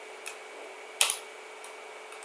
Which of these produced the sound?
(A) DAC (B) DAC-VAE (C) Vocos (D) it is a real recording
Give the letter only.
D